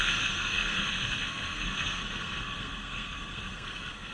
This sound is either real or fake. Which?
fake